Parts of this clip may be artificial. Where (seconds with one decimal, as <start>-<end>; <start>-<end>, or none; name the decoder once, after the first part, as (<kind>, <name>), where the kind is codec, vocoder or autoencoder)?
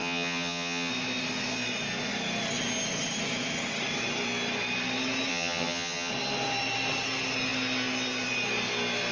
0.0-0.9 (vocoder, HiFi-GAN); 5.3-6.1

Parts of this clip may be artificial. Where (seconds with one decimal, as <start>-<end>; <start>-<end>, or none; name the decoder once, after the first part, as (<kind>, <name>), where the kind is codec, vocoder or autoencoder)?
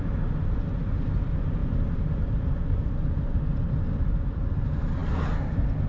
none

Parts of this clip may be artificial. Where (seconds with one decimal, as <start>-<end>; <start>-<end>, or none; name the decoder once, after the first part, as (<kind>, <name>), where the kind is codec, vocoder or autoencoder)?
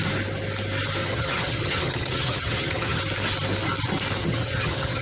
1.0-3.0 (vocoder, HiFi-GAN); 4.2-5.0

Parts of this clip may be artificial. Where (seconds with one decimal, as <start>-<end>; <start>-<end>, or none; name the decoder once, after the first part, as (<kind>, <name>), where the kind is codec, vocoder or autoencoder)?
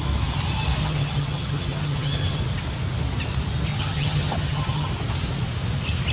0.8-2.4 (vocoder, HiFi-GAN); 3.7-4.9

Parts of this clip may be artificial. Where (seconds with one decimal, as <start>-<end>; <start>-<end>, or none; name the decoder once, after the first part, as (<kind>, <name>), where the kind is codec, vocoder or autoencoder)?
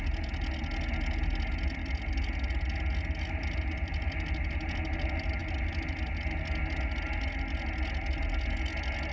none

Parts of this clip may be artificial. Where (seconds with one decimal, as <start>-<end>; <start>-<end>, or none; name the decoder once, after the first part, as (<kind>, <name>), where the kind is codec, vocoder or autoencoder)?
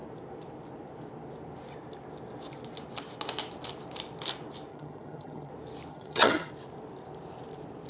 4.7-5.5 (vocoder, HiFi-GAN); 5.9-6.5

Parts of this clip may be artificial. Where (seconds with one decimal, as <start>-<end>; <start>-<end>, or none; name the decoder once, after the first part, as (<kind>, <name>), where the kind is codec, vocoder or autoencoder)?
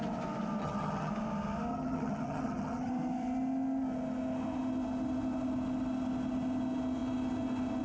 0.6-1.1 (vocoder, HiFi-GAN); 1.7-2.9